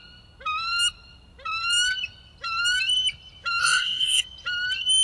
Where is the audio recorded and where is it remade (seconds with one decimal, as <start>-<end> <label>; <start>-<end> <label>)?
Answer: 0.0-3.6 recorded; 3.6-4.2 remade; 4.2-5.0 recorded